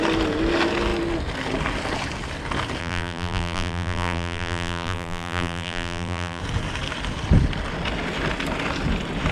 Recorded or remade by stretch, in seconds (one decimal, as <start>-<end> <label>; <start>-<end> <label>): 0.0-2.8 recorded; 2.8-6.4 remade; 6.4-9.3 recorded